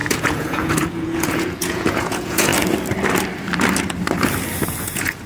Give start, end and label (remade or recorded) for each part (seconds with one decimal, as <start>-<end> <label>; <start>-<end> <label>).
0.0-2.5 remade; 2.5-4.8 recorded; 4.8-5.3 remade

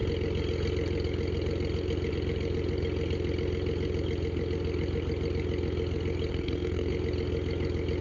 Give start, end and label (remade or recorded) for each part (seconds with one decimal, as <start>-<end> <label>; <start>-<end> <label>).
0.0-6.3 recorded; 6.3-6.9 remade; 6.9-8.0 recorded

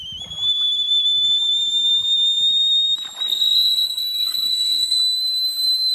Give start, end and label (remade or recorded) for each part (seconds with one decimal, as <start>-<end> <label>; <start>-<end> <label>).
0.0-3.3 recorded; 3.3-5.0 remade; 5.0-5.9 recorded

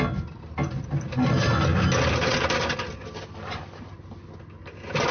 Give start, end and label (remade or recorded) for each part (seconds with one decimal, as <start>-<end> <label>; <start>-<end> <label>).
0.0-5.1 recorded

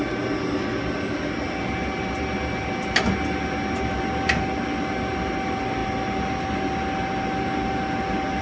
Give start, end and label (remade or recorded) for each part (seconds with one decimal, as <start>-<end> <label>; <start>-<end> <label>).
0.0-8.4 recorded

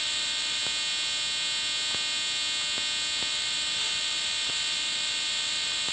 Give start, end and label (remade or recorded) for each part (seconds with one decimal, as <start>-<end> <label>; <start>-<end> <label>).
0.0-0.6 remade; 0.6-3.3 recorded; 3.3-5.9 remade

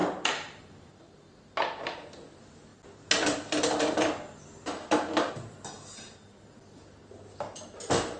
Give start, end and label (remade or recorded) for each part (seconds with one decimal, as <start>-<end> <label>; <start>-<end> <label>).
0.0-8.2 recorded

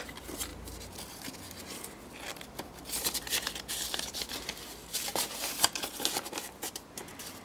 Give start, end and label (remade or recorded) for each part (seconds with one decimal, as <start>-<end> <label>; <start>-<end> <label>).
0.0-5.1 remade; 5.1-6.4 recorded; 6.4-7.4 remade